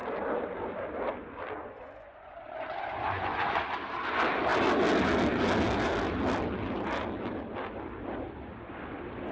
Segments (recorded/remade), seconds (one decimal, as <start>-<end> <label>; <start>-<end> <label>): 0.0-1.6 recorded; 1.6-3.6 remade; 3.6-9.3 recorded